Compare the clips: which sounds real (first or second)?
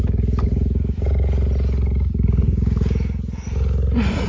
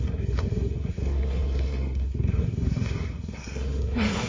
first